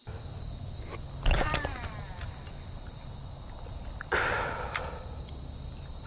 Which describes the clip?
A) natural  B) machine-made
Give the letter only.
B